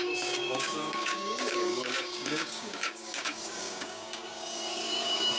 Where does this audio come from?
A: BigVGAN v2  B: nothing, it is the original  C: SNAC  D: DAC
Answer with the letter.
D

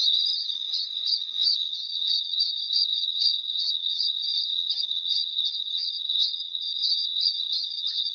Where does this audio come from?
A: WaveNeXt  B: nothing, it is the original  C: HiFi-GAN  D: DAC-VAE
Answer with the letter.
C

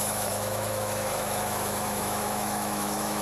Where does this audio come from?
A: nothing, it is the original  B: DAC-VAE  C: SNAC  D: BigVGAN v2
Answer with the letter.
B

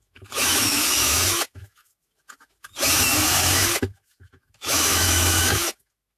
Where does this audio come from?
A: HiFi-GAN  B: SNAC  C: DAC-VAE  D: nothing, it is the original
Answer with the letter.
C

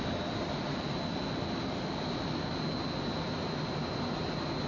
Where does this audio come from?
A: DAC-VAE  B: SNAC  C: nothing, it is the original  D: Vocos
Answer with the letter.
C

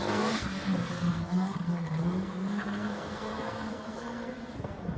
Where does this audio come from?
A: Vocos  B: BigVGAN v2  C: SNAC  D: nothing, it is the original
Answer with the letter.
C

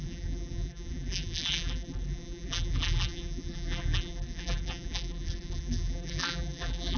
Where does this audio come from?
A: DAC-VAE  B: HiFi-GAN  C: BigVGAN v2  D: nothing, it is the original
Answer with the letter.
C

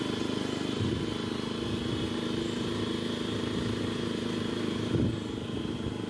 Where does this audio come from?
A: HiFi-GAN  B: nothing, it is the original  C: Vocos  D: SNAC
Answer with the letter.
B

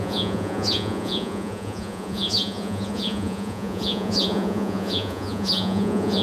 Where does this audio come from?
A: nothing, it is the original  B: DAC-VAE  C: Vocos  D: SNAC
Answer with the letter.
C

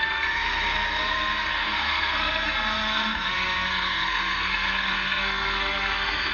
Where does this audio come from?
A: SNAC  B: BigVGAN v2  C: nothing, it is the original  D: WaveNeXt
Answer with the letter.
A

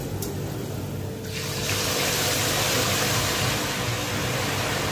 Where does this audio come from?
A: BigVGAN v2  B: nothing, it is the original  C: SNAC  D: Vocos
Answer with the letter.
B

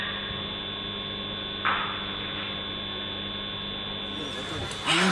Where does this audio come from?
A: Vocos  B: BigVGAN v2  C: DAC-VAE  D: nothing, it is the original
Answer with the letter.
D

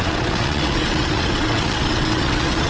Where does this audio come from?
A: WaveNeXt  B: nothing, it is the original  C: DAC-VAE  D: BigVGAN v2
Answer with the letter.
A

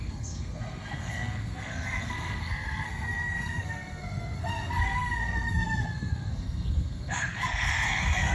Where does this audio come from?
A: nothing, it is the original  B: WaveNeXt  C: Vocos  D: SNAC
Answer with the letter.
D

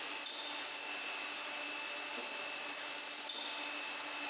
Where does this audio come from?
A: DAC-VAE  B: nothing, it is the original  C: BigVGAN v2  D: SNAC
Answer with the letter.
B